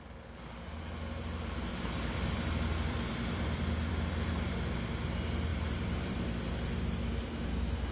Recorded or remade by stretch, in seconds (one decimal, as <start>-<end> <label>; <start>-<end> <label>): 0.0-1.7 recorded; 1.7-4.8 remade; 4.8-5.5 recorded; 5.5-6.3 remade; 6.3-7.9 recorded